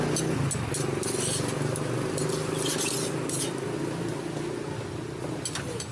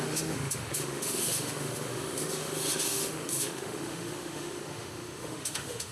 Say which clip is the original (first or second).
first